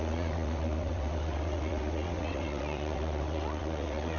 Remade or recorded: remade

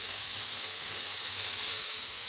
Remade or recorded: remade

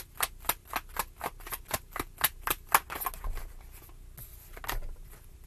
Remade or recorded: recorded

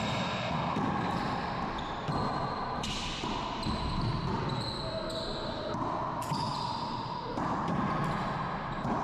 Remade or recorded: recorded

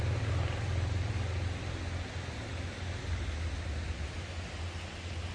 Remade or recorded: recorded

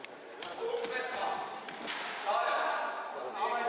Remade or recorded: recorded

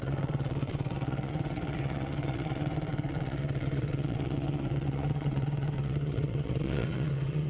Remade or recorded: remade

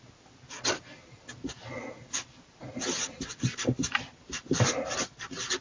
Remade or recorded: recorded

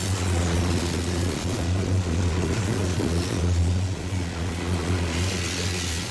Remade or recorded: remade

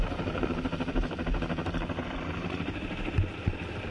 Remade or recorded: remade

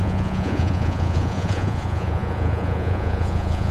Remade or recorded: remade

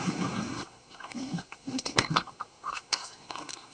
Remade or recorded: remade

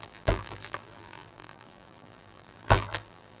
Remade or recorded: remade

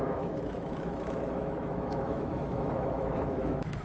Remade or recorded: remade